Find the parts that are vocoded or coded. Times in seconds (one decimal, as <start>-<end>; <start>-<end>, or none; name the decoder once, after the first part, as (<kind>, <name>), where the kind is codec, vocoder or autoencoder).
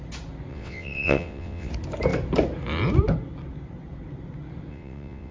0.5-1.7 (vocoder, WaveNeXt); 4.7-5.3